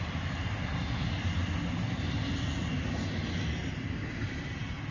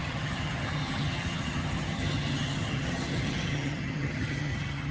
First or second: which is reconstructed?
second